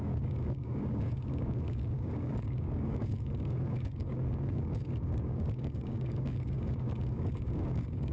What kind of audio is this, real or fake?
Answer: fake